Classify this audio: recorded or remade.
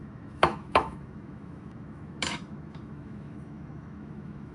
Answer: remade